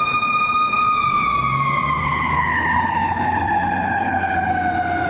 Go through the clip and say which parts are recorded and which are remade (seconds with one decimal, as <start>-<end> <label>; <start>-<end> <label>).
0.0-2.0 recorded; 2.0-4.5 remade; 4.5-5.1 recorded